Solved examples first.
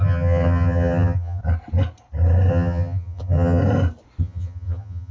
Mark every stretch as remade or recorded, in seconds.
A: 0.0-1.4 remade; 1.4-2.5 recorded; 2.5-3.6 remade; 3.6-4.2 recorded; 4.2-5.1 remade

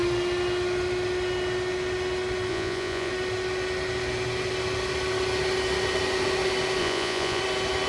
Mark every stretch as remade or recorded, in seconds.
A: 0.0-2.5 recorded; 2.5-3.1 remade; 3.1-6.8 recorded; 6.8-7.4 remade; 7.4-7.9 recorded

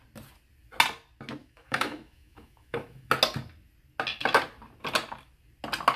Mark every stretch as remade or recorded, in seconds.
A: 0.0-1.4 recorded; 1.4-3.1 remade; 3.1-6.0 recorded

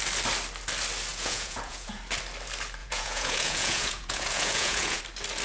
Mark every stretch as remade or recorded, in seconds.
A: 0.0-1.1 recorded; 1.1-2.0 remade; 2.0-2.8 recorded; 2.8-5.0 remade; 5.0-5.4 recorded

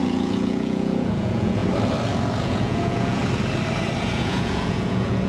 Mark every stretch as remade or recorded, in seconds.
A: 0.0-1.6 remade; 1.6-2.4 recorded; 2.4-3.2 remade; 3.2-4.1 recorded; 4.1-5.3 remade